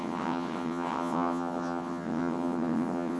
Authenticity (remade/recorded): remade